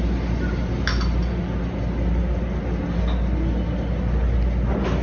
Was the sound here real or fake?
real